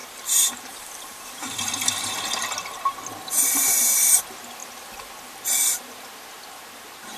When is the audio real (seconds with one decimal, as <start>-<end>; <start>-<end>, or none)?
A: 2.2-4.6; 5.4-7.2